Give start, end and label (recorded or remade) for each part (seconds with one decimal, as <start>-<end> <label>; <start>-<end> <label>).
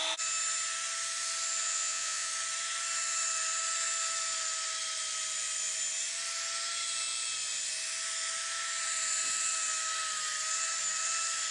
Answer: 0.0-1.6 recorded; 1.6-2.3 remade; 2.3-11.5 recorded